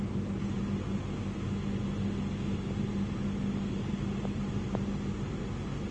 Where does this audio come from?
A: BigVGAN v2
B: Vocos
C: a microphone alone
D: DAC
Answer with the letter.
C